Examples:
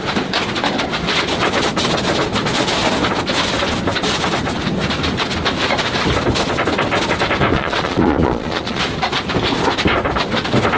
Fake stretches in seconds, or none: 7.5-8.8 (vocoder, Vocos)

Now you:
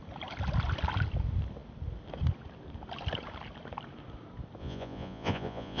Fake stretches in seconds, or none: 4.6-5.8 (vocoder, Vocos)

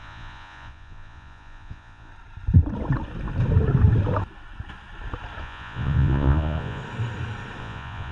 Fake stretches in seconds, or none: 0.0-2.1 (vocoder, Vocos); 5.4-6.8; 7.6-8.1

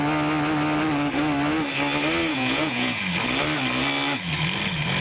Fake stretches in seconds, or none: 2.3-3.0 (vocoder, Vocos)

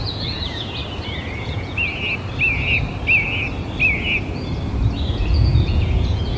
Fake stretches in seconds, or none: 0.0-0.8 (vocoder, Vocos); 1.4-1.9; 5.1-6.4

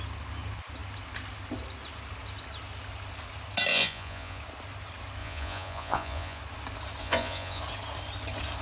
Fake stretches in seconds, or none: 3.7-4.4 (vocoder, Vocos); 5.2-6.4; 7.0-7.6

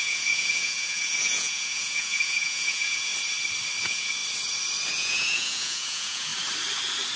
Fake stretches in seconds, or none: 0.0-3.1 (vocoder, Vocos); 3.8-4.2; 4.9-6.3

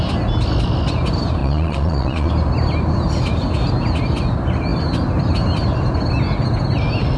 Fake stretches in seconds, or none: 1.4-2.3 (vocoder, Vocos)